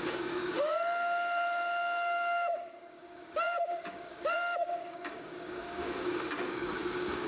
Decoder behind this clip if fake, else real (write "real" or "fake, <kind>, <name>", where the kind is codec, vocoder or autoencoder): fake, codec, DAC